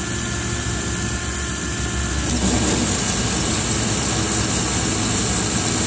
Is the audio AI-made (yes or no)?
no